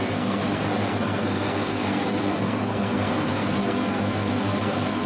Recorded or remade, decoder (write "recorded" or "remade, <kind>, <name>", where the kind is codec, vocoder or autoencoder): remade, codec, SNAC